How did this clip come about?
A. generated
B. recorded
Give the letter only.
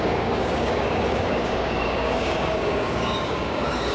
A